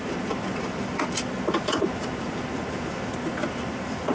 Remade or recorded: remade